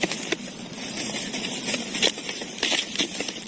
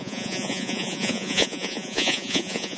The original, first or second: first